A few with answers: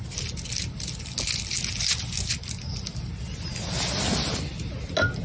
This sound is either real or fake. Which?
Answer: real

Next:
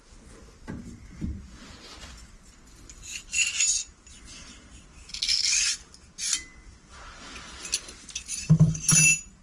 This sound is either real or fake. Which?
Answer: real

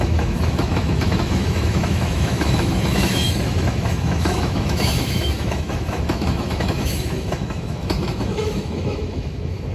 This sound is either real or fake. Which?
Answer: fake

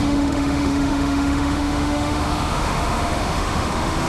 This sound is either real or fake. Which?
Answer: fake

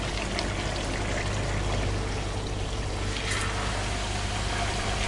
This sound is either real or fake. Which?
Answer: real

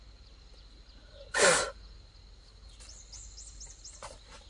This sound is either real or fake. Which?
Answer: real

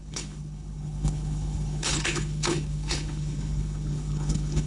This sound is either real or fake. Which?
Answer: fake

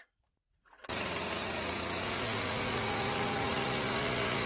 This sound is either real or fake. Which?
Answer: fake